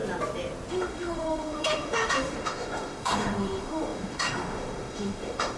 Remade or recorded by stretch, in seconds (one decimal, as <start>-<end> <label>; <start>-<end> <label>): 0.0-0.7 recorded; 0.7-5.6 remade